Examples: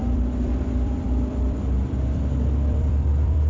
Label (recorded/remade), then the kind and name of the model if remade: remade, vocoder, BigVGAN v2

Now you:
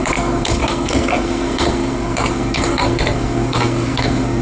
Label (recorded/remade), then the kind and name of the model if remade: remade, codec, SNAC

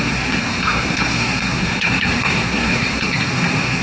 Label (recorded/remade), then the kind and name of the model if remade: remade, codec, SNAC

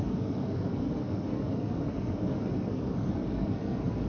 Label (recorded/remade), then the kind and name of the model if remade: remade, codec, SNAC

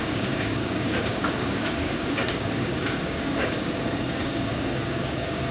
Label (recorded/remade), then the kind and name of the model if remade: remade, codec, DAC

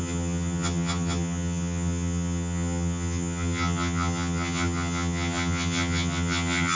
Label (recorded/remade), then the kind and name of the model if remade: remade, vocoder, HiFi-GAN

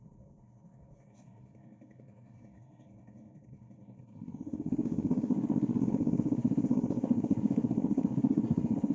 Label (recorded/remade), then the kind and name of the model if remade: remade, codec, SNAC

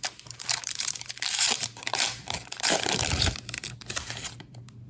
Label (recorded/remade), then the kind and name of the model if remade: remade, vocoder, BigVGAN v2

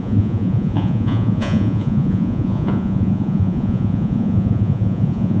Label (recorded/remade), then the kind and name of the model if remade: remade, vocoder, Vocos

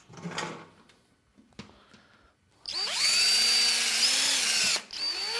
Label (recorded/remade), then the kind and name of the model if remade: recorded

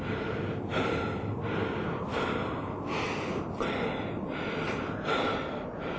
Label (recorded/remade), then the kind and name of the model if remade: recorded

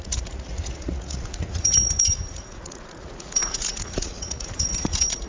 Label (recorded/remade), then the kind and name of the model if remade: remade, vocoder, Vocos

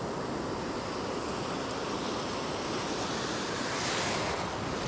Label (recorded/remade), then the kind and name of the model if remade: recorded